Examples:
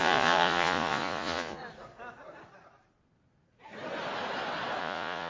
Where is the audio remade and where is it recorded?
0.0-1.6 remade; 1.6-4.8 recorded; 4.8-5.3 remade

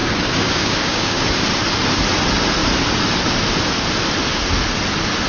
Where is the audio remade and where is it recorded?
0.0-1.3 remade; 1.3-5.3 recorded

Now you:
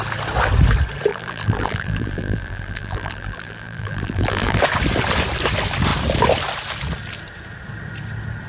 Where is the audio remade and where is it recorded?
0.0-1.1 recorded; 1.1-4.6 remade; 4.6-8.5 recorded

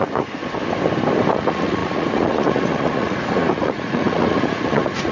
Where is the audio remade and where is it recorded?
0.0-0.4 remade; 0.4-1.3 recorded; 1.3-5.1 remade

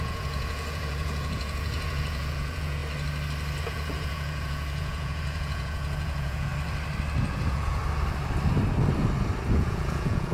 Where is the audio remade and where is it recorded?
0.0-2.8 remade; 2.8-3.6 recorded; 3.6-6.5 remade; 6.5-7.2 recorded; 7.2-7.8 remade; 7.8-9.5 recorded; 9.5-10.3 remade

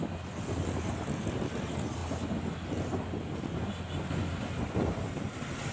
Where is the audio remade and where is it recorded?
0.0-5.7 recorded

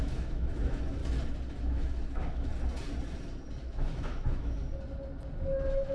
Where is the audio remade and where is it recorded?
0.0-1.0 remade; 1.0-1.6 recorded; 1.6-2.5 remade; 2.5-3.6 recorded; 3.6-4.6 remade; 4.6-5.4 recorded; 5.4-5.9 remade

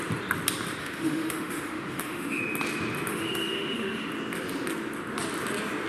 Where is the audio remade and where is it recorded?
0.0-0.8 recorded; 0.8-2.4 remade; 2.4-3.1 recorded; 3.1-4.1 remade; 4.1-5.9 recorded